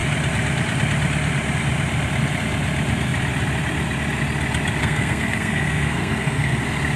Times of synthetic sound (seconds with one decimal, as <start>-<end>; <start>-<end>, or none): 4.8-6.6